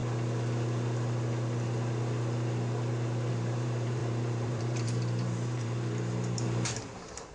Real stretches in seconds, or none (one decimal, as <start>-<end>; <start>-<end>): 0.0-3.3